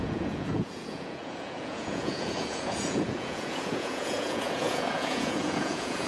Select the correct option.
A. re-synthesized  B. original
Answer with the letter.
A